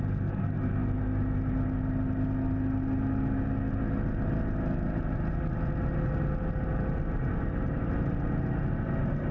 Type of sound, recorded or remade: recorded